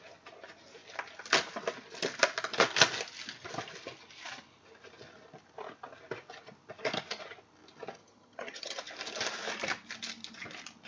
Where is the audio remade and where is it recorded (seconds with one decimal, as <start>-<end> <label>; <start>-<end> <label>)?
0.0-8.0 recorded; 8.0-8.8 remade; 8.8-10.9 recorded